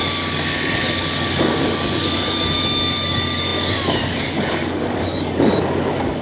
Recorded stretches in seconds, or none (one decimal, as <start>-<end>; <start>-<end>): none